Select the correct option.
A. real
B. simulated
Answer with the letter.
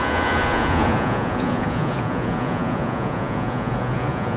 B